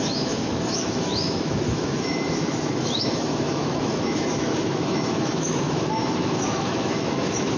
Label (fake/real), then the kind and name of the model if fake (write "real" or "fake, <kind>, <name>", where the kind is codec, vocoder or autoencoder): fake, autoencoder, DAC-VAE